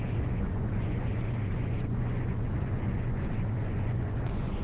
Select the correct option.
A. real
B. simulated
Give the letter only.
B